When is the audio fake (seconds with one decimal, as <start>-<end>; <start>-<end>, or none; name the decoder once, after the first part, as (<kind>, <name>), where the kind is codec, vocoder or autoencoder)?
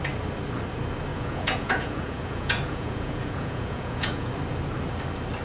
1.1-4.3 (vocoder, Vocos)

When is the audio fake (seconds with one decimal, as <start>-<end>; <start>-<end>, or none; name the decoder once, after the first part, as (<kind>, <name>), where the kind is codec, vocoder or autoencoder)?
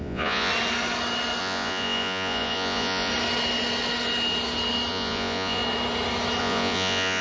0.0-0.5 (vocoder, Vocos); 1.4-3.1; 4.9-5.6; 6.4-7.2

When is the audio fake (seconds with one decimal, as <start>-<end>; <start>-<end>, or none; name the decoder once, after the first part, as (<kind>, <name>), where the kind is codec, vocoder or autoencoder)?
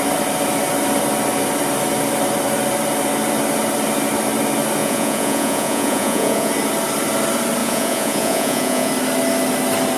4.8-6.5 (vocoder, Vocos); 7.6-8.9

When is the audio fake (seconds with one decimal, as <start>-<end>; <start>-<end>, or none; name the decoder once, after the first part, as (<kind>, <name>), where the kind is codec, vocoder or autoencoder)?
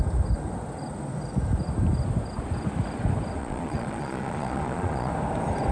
3.4-5.1 (vocoder, Vocos)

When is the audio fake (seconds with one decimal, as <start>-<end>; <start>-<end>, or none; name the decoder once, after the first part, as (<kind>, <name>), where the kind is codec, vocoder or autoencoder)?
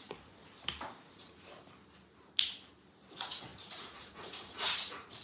0.0-0.4 (vocoder, Vocos); 1.0-1.5; 3.1-5.2